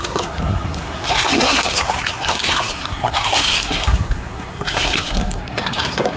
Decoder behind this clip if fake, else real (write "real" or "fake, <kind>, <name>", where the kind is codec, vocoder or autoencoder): fake, codec, SNAC